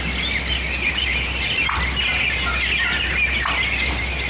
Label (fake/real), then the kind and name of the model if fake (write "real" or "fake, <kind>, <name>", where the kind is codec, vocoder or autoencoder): real